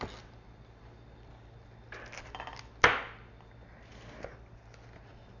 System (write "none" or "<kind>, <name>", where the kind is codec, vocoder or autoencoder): none